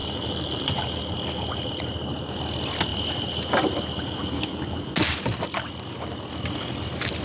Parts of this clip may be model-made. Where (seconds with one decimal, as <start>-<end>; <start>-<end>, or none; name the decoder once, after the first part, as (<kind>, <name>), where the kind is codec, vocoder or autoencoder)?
none